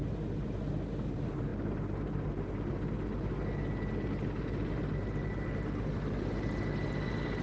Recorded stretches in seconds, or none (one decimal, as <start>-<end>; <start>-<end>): 0.0-7.4